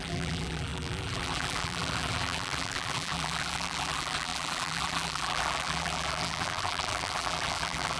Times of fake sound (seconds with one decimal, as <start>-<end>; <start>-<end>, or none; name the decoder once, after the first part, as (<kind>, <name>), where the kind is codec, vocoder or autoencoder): 0.0-8.0 (vocoder, BigVGAN v2)